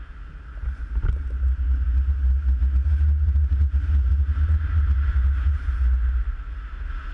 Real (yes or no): yes